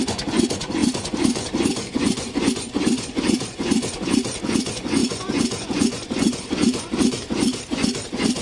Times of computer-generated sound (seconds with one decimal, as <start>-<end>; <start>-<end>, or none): 0.0-8.4